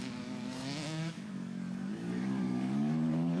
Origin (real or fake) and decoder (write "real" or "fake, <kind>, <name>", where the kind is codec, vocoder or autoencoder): fake, codec, DAC